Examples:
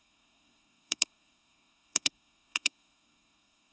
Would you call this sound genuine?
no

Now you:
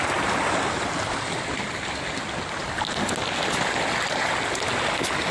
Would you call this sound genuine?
yes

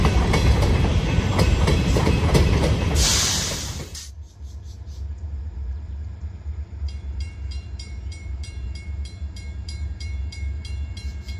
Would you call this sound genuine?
no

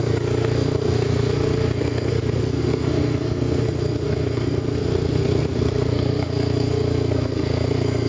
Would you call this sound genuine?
no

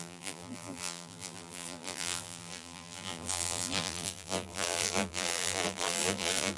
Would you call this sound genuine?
no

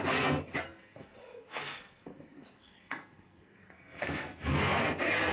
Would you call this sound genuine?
no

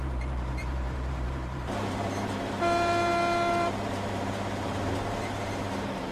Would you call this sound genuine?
no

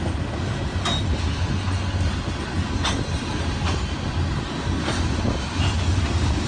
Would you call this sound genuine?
yes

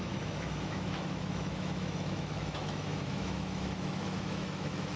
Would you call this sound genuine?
no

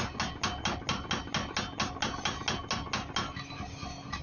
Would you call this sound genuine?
yes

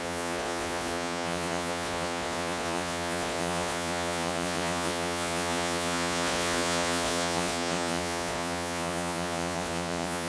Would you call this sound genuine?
no